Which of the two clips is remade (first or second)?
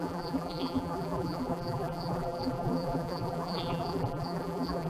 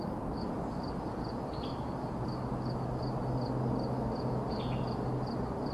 first